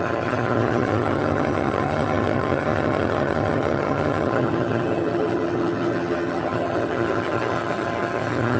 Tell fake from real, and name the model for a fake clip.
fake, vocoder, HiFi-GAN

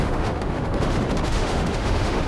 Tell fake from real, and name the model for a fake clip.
fake, autoencoder, DAC-VAE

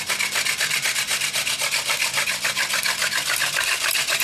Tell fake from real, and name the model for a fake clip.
real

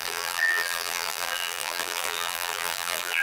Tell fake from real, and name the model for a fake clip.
fake, vocoder, BigVGAN v2